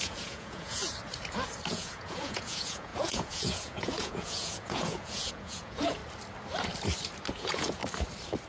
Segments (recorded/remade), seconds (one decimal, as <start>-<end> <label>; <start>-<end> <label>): 0.0-0.8 remade; 0.8-1.7 recorded; 1.7-6.0 remade; 6.0-7.3 recorded; 7.3-7.8 remade; 7.8-8.5 recorded